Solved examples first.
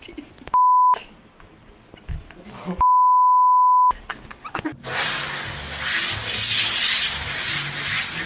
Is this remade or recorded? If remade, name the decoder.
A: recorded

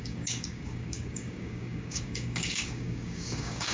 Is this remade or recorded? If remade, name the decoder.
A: remade, codec, DAC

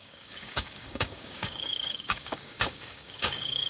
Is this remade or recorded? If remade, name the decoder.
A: remade, codec, DAC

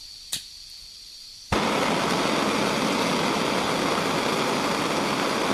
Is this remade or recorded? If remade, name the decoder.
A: recorded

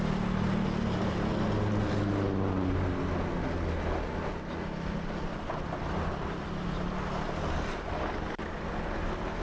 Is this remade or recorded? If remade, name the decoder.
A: recorded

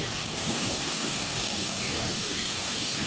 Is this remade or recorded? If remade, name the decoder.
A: remade, codec, DAC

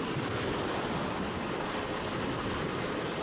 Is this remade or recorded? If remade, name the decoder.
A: recorded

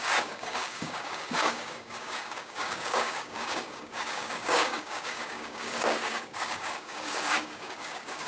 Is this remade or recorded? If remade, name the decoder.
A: remade, codec, DAC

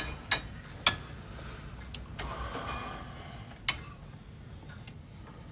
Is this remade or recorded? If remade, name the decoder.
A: recorded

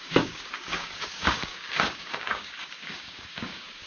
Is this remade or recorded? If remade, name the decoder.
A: remade, codec, DAC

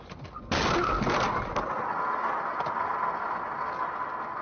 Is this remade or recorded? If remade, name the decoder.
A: recorded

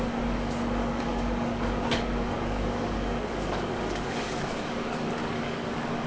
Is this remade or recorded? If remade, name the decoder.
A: remade, codec, DAC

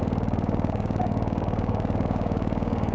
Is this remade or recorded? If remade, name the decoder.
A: remade, codec, DAC